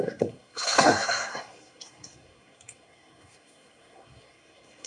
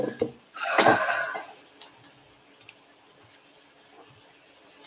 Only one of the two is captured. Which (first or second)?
second